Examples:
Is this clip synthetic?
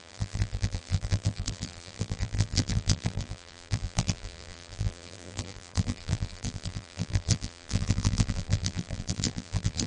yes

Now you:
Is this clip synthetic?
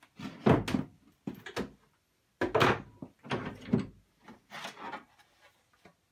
no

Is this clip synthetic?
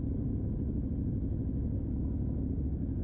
no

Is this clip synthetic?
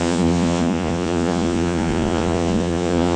yes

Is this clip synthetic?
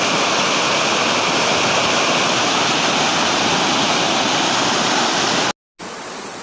no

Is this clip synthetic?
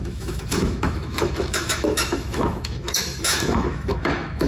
yes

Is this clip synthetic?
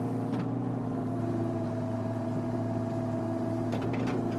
yes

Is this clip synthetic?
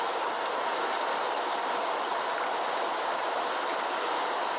no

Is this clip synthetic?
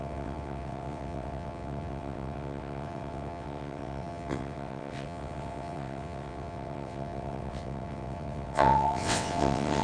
yes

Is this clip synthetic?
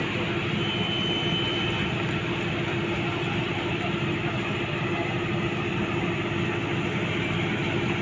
no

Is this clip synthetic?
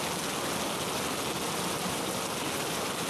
no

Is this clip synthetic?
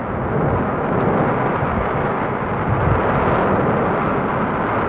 no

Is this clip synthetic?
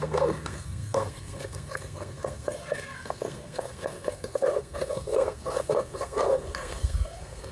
yes